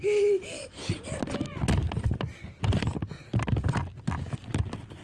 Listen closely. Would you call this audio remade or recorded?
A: recorded